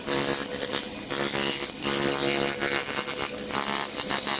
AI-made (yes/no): no